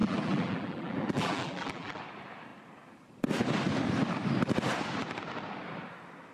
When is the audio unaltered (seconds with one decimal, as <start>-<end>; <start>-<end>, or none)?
2.0-6.3